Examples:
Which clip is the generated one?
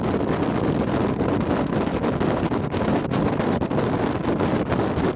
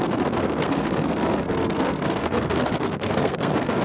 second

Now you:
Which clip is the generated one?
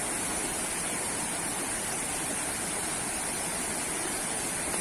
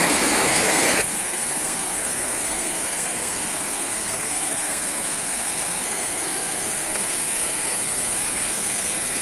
second